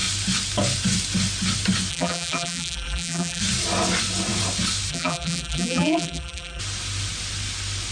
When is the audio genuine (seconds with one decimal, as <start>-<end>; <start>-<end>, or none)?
0.0-1.9; 3.4-4.9; 6.6-7.9